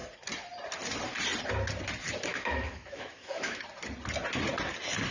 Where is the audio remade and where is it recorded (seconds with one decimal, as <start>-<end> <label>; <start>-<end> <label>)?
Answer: 0.0-2.3 recorded; 2.3-3.6 remade; 3.6-5.1 recorded